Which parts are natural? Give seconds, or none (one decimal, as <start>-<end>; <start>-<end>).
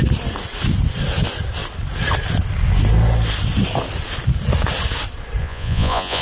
0.0-5.4